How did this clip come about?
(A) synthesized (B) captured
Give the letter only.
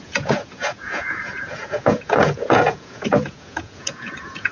A